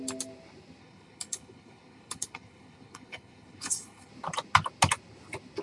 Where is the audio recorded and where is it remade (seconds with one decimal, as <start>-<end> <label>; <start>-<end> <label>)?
0.0-0.8 recorded; 0.8-4.1 remade; 4.1-5.6 recorded